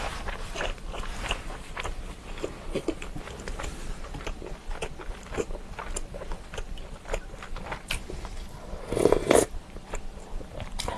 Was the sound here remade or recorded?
recorded